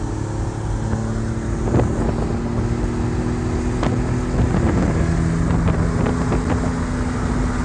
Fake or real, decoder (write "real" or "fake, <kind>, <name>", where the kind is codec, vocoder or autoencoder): real